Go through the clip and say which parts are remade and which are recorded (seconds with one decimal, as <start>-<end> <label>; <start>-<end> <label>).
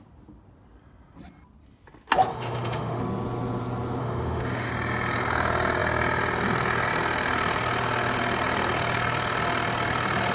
0.0-2.3 recorded; 2.3-3.0 remade; 3.0-4.0 recorded; 4.0-4.7 remade; 4.7-10.3 recorded